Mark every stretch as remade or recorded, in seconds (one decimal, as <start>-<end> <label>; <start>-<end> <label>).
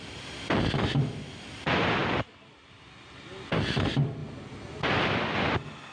0.0-5.9 recorded